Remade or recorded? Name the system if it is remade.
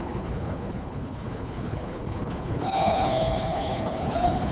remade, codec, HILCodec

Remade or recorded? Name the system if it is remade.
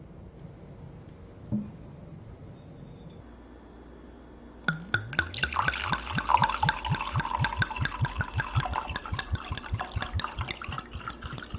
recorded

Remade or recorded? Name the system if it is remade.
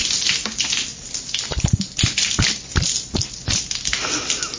recorded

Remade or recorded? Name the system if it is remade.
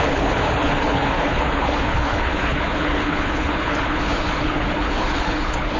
remade, codec, HILCodec